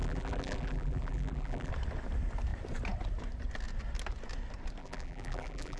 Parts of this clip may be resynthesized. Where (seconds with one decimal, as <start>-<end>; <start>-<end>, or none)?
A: 0.0-1.7; 4.8-5.8